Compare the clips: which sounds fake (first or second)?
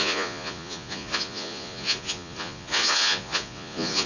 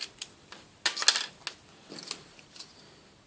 first